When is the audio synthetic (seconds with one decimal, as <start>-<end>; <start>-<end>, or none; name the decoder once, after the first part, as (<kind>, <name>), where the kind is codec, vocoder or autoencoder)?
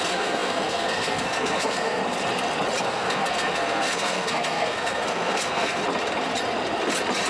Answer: 0.0-2.0 (codec, SNAC); 2.8-5.8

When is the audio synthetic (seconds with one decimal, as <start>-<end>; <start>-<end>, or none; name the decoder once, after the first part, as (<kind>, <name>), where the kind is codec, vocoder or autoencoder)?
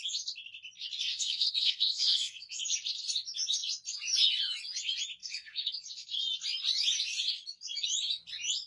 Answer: 1.1-2.6 (codec, SNAC); 5.2-5.7